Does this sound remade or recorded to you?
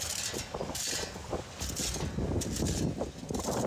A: recorded